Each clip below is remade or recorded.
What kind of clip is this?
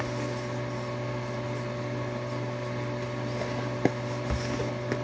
recorded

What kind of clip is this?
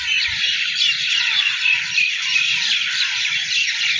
remade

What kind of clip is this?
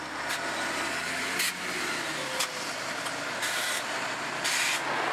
recorded